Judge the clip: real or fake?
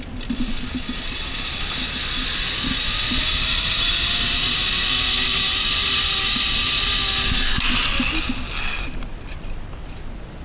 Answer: real